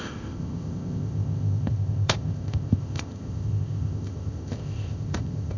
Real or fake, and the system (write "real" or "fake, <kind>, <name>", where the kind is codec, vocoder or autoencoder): fake, codec, ZipCodec